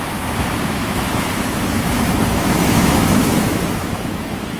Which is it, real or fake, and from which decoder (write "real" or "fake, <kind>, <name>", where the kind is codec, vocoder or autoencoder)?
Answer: fake, autoencoder, DAC-VAE